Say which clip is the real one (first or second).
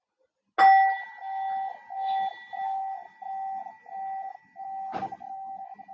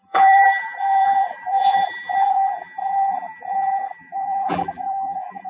first